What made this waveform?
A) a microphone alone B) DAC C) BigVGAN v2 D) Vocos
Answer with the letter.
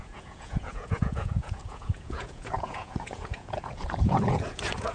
D